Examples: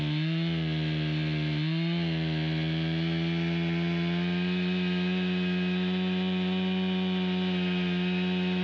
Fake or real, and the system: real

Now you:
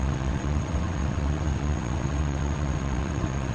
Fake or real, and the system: fake, vocoder, WaveNeXt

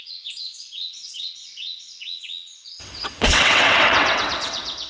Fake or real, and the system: fake, vocoder, WaveNeXt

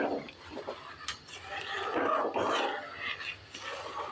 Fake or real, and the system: real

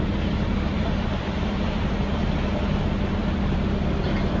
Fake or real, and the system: real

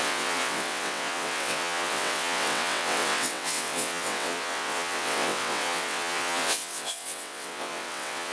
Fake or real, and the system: fake, vocoder, WaveNeXt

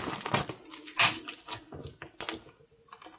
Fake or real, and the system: real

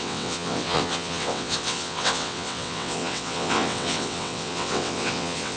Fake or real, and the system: fake, vocoder, WaveNeXt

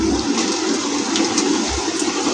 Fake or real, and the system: real